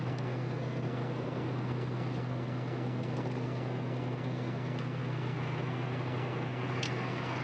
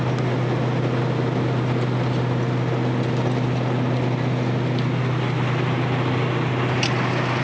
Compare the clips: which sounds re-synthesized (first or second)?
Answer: first